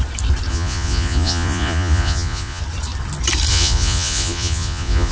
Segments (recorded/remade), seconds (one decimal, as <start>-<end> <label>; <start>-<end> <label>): 0.0-0.5 recorded; 0.5-2.6 remade; 2.6-3.5 recorded; 3.5-5.1 remade